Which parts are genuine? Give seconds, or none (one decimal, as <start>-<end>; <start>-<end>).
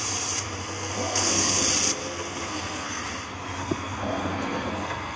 0.0-0.6; 1.6-2.0; 3.0-3.6